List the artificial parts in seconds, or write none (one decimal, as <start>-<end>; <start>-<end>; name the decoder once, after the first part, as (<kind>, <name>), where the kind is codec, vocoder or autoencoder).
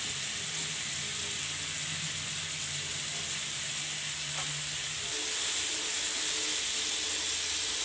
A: none